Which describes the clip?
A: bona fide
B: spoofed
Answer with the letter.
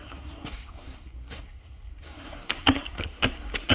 B